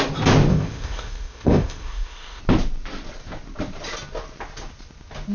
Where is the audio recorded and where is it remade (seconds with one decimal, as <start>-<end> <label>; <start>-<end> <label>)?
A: 0.0-0.5 recorded; 0.5-2.4 remade; 2.4-5.3 recorded